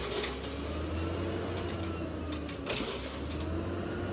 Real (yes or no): yes